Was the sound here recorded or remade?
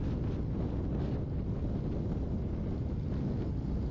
recorded